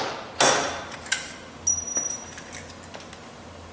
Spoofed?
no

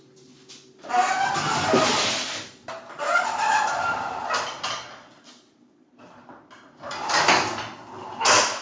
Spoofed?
no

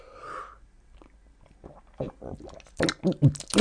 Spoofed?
no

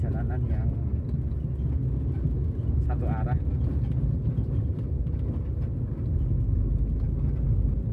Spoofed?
no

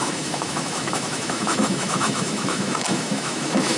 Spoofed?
yes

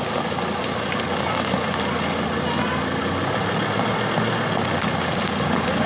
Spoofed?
no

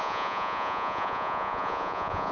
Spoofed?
yes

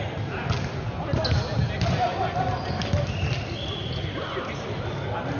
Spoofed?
no